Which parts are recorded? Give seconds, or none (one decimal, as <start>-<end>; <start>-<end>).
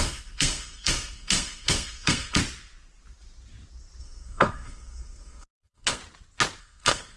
2.4-4.0; 6.0-6.6